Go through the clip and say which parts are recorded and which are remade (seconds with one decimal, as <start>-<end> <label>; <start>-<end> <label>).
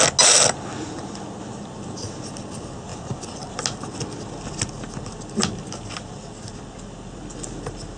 0.0-8.0 recorded